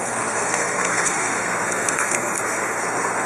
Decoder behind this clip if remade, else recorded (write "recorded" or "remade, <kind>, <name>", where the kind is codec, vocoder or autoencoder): remade, codec, SNAC